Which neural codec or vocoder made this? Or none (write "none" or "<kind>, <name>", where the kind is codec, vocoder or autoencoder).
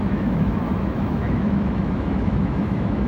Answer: autoencoder, DAC-VAE